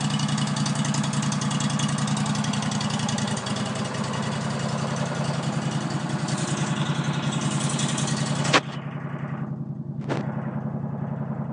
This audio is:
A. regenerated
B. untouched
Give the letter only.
B